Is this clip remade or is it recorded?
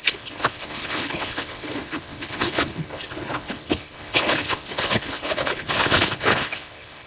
remade